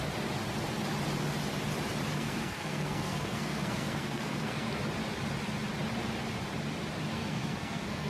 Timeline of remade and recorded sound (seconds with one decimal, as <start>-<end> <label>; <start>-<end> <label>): 0.0-2.1 recorded; 2.1-4.8 remade; 4.8-7.1 recorded; 7.1-8.1 remade